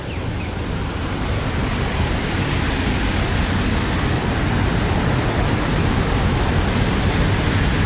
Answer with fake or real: real